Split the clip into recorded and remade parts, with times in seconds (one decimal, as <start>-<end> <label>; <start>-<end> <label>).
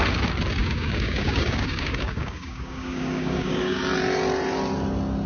0.0-0.6 recorded; 0.6-3.8 remade; 3.8-5.3 recorded